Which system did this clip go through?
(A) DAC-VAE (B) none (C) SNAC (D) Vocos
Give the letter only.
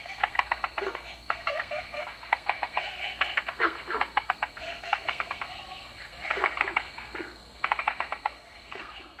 C